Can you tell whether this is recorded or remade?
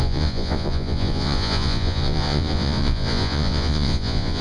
remade